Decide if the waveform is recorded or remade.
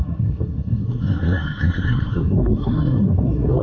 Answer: remade